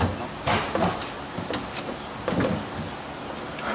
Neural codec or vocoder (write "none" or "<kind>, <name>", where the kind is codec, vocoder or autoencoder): none